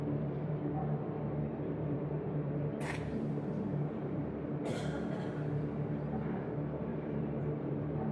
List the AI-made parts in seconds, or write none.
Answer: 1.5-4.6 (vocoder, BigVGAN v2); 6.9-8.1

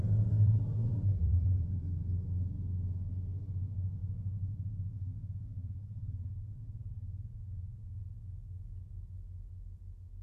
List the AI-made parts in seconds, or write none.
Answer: 0.4-1.8 (vocoder, BigVGAN v2); 5.6-8.0

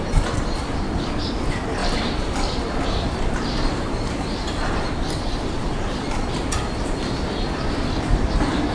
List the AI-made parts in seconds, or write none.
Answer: 1.8-4.8 (vocoder, BigVGAN v2); 5.6-6.3

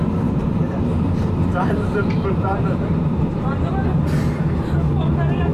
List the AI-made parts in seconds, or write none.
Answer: 0.4-3.7 (vocoder, BigVGAN v2)

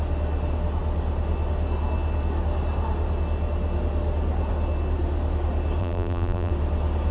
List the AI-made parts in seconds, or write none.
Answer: 5.8-6.5 (vocoder, BigVGAN v2)

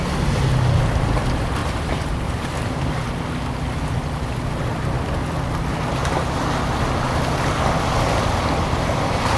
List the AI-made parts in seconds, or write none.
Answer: 1.6-3.1 (vocoder, BigVGAN v2)

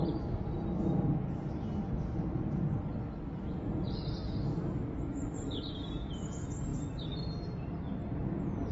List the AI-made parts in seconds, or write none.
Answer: 2.9-6.2 (vocoder, BigVGAN v2)

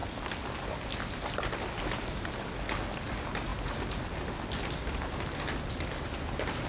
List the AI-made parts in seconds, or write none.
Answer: 3.5-4.6 (vocoder, BigVGAN v2)